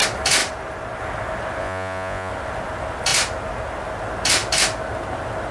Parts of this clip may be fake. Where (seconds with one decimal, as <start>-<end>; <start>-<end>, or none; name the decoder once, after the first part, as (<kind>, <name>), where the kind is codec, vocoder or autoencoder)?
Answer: 1.6-2.3 (vocoder, Vocos)